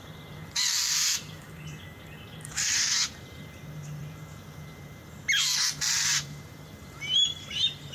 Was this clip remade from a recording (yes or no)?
yes